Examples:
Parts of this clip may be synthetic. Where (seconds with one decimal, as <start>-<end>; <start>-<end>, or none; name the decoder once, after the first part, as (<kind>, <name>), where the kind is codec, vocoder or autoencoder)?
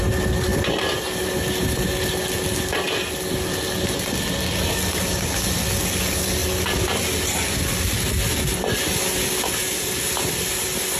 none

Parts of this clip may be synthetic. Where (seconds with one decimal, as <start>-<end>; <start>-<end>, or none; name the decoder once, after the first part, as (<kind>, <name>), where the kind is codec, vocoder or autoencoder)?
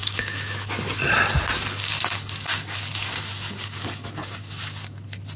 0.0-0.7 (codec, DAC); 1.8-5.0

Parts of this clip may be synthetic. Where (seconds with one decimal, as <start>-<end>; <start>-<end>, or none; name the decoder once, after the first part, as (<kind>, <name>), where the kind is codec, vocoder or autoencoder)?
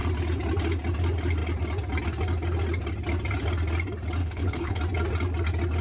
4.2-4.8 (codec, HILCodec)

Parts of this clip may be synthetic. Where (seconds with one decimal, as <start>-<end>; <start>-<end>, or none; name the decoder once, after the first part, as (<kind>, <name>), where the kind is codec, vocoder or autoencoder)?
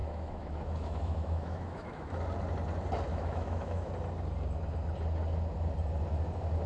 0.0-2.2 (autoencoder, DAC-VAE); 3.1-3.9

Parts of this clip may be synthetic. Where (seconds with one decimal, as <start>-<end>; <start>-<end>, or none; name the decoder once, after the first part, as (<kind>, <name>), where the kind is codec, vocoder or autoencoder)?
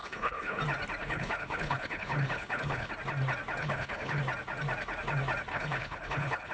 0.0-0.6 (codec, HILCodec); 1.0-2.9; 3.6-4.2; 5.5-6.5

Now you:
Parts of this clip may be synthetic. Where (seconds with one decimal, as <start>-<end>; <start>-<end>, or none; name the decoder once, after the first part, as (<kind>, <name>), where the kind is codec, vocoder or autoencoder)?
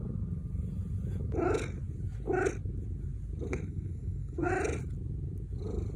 3.5-4.5 (codec, SNAC)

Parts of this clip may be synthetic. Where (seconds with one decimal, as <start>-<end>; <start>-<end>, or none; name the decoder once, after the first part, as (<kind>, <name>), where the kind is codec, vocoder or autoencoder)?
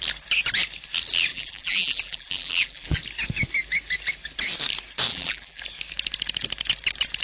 1.3-3.0 (vocoder, BigVGAN v2); 5.1-5.6